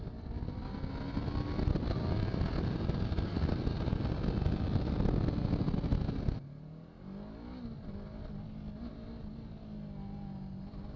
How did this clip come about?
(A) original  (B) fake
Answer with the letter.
A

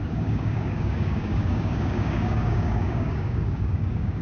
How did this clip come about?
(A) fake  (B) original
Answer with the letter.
A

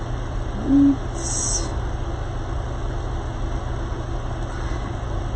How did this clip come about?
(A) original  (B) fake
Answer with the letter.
A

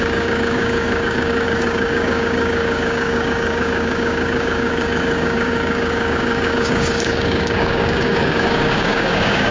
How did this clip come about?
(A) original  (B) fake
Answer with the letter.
B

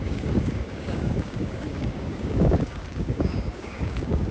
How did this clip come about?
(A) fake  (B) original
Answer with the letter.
A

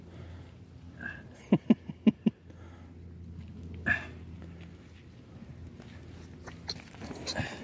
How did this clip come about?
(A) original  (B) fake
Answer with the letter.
A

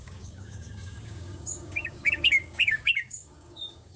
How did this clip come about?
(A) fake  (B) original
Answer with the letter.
A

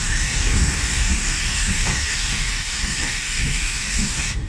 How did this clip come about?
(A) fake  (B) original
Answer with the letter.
A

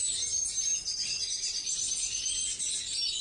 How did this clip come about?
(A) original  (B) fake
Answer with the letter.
A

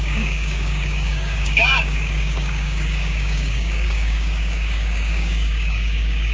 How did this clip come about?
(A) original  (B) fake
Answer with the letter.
B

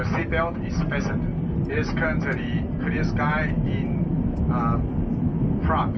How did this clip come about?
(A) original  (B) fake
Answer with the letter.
A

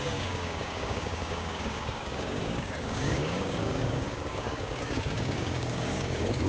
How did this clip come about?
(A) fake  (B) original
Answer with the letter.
A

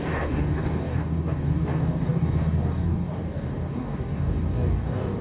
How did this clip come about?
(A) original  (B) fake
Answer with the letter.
B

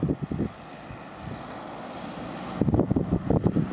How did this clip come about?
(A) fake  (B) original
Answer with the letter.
B